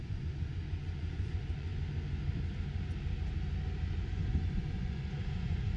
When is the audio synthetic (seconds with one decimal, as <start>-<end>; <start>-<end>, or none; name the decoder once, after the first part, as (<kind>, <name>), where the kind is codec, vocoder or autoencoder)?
0.0-1.7 (vocoder, Vocos); 4.0-5.8

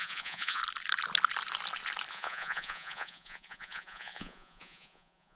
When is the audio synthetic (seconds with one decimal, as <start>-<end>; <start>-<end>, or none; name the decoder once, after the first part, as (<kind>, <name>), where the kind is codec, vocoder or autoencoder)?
0.0-0.6 (vocoder, Vocos); 2.1-5.4

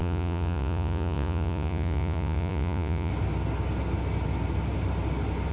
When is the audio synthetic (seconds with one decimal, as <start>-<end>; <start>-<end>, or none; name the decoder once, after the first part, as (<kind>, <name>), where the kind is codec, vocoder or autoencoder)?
0.0-3.1 (vocoder, Vocos)

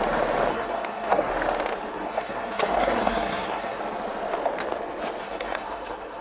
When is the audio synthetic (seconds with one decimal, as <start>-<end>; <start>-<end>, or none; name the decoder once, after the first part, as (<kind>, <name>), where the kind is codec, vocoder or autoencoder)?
0.5-1.3 (codec, SNAC); 1.9-3.8; 5.2-6.2